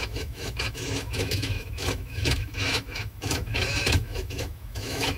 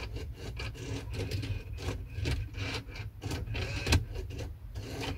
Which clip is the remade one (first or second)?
first